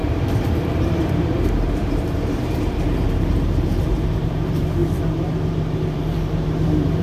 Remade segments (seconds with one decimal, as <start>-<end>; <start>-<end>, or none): 0.0-7.0